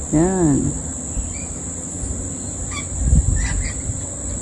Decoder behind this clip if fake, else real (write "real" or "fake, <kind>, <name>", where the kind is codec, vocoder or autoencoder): real